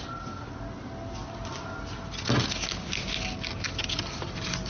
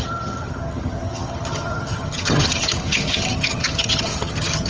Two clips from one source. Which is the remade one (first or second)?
second